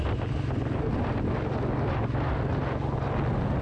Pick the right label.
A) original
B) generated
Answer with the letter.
A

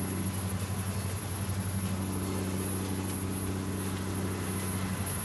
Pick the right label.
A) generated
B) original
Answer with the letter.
B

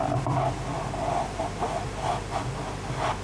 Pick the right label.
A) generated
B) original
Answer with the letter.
B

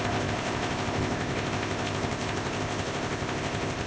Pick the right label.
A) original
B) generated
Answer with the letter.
B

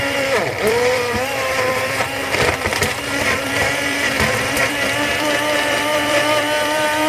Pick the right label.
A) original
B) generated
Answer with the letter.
B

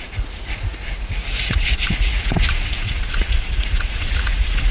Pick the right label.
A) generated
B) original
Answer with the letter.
A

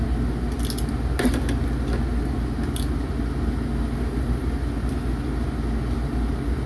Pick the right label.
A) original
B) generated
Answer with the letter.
A